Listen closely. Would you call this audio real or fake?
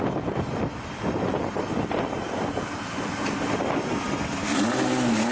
real